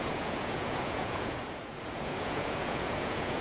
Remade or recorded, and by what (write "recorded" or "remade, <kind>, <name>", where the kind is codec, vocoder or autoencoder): remade, vocoder, Vocos